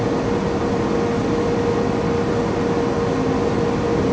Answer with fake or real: real